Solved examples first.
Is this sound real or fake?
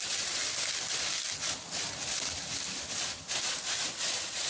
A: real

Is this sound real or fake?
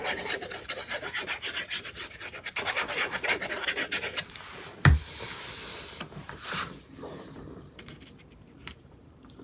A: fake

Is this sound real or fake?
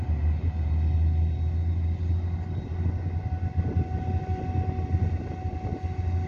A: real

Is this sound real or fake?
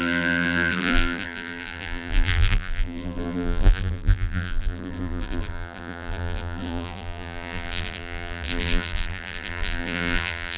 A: fake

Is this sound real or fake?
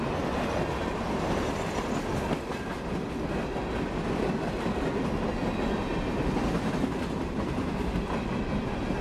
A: real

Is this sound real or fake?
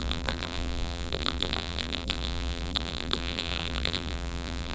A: fake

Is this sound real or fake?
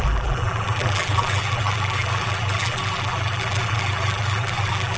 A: fake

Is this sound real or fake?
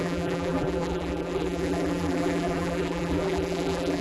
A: fake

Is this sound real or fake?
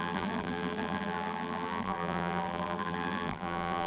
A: fake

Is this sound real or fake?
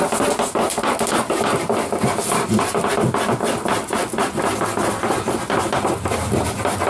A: real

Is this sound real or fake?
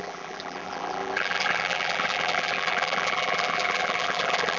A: fake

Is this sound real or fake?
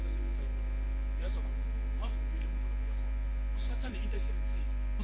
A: fake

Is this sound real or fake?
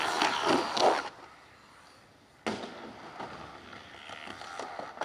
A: real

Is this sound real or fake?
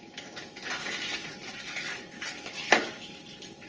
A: real